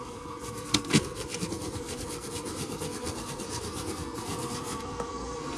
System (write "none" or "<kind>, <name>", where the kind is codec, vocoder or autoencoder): codec, SNAC